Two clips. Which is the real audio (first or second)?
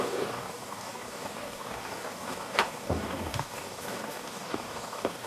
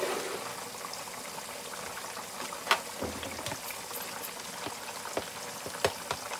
second